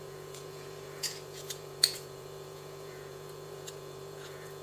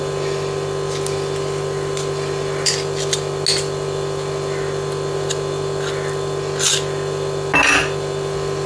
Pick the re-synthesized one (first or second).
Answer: first